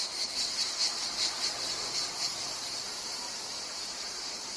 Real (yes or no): yes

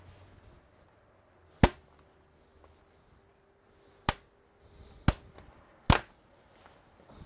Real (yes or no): yes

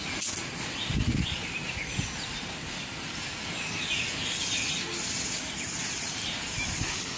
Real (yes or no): yes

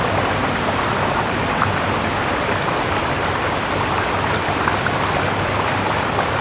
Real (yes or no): yes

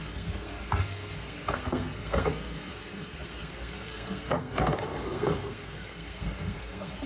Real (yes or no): no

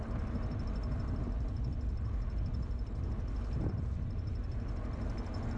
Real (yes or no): yes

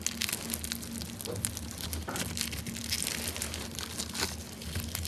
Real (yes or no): yes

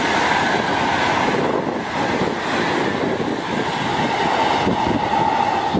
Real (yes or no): yes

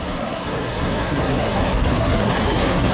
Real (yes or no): no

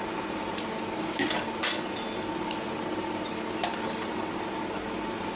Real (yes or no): yes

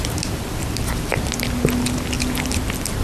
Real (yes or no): yes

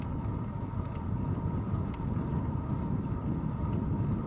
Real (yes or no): yes